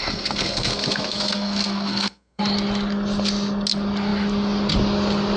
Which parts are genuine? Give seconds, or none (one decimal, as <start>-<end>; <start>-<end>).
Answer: 2.4-5.4